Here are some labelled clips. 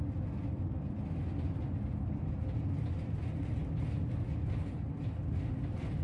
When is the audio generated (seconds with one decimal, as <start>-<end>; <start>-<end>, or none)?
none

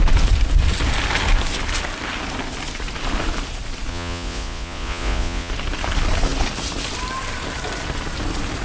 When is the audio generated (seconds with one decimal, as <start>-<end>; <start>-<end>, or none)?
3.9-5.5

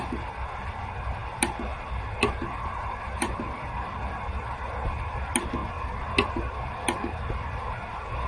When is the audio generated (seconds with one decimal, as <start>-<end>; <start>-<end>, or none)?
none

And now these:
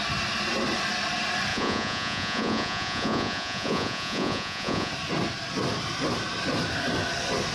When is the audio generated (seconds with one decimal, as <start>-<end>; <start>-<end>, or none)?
1.5-4.9